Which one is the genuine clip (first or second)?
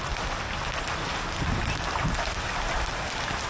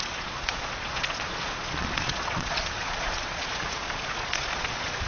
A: first